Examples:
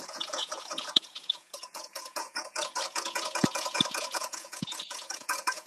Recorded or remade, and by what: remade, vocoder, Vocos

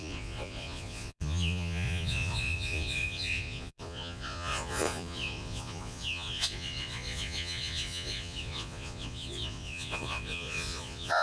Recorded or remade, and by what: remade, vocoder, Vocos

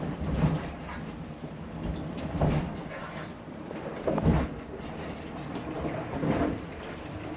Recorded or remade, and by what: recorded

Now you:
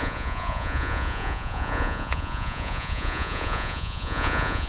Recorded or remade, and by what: remade, vocoder, Vocos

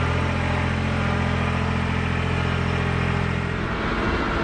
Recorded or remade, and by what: recorded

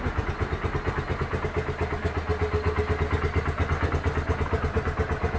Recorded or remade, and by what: recorded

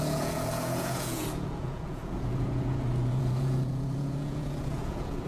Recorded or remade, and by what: remade, vocoder, Vocos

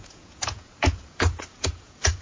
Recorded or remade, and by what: remade, vocoder, Vocos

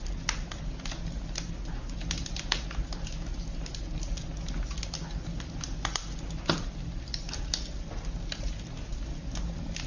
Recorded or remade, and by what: recorded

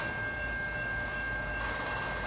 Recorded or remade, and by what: recorded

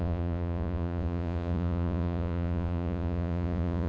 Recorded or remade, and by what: remade, vocoder, Vocos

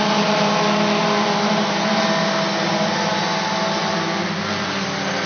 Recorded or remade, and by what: recorded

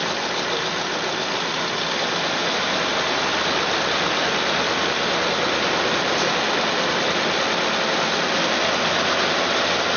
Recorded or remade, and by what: recorded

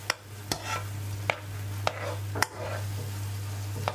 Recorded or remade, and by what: recorded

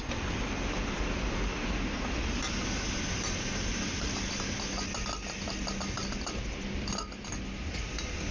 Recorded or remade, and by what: recorded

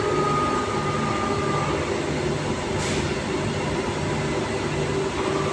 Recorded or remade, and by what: recorded